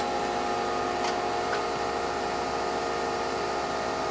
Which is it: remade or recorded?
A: recorded